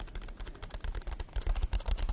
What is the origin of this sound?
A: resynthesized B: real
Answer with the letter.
B